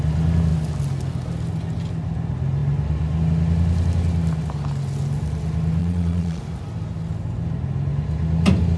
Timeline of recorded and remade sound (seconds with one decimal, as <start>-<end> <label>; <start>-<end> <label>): 0.0-5.8 recorded; 5.8-6.4 remade; 6.4-8.8 recorded